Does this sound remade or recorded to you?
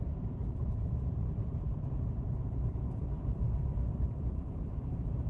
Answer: remade